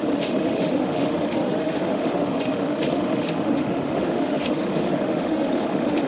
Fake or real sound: fake